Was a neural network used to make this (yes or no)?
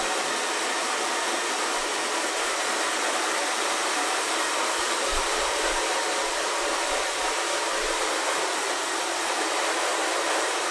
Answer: yes